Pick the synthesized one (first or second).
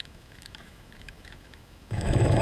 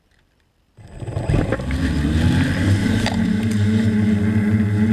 first